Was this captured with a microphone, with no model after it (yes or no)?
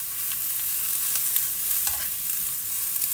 yes